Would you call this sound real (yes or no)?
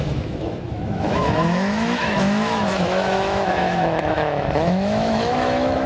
no